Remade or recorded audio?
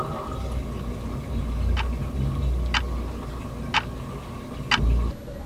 recorded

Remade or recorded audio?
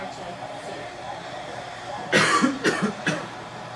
remade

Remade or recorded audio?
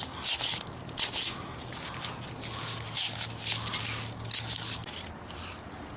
recorded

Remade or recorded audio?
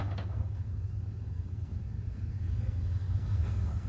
remade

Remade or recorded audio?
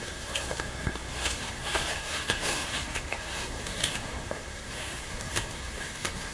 remade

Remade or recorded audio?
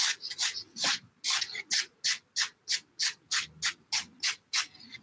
recorded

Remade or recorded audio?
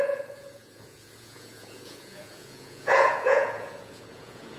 remade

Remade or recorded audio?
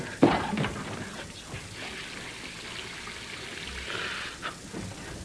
recorded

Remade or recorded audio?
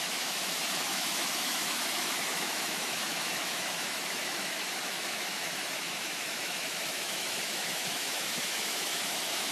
remade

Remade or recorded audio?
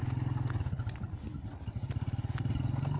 recorded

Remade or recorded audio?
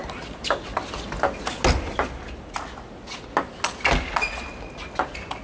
recorded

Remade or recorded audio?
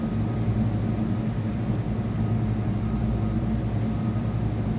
recorded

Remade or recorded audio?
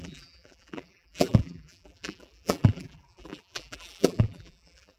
remade